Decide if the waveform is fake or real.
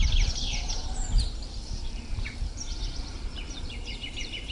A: fake